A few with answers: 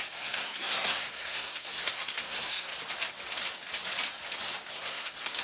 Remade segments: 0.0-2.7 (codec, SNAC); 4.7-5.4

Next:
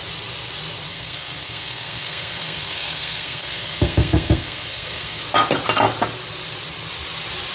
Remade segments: 0.9-5.2 (codec, SNAC)

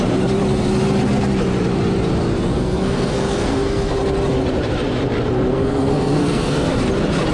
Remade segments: 2.5-3.9 (codec, SNAC); 5.5-6.7

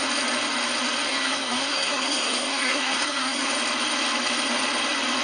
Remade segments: 1.1-3.5 (codec, SNAC)